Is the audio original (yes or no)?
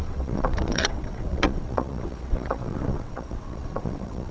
no